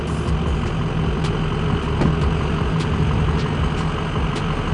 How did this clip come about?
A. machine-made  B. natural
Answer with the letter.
B